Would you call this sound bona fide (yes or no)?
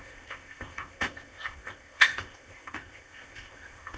no